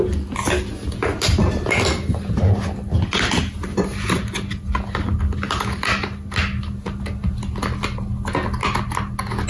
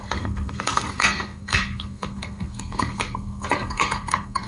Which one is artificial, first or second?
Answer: second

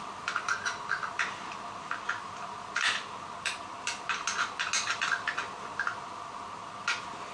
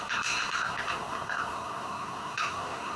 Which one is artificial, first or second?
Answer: second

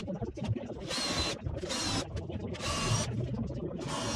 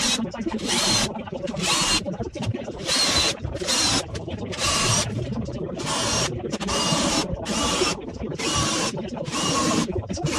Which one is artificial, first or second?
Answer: second